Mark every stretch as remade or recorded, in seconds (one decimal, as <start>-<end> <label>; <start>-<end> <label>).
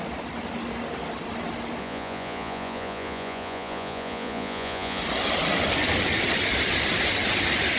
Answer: 0.0-1.8 recorded; 1.8-5.0 remade; 5.0-7.8 recorded